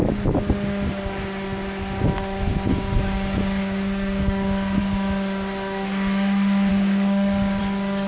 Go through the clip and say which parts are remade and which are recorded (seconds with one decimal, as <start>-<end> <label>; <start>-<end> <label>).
0.0-2.5 recorded; 2.5-4.8 remade; 4.8-6.7 recorded; 6.7-7.6 remade; 7.6-8.1 recorded